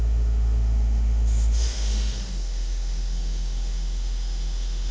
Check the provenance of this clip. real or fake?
fake